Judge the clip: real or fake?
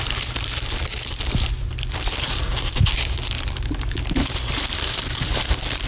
fake